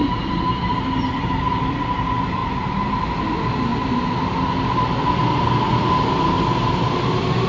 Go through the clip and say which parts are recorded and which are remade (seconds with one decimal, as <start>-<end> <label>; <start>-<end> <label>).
0.0-1.6 recorded; 1.6-2.4 remade; 2.4-6.9 recorded; 6.9-7.5 remade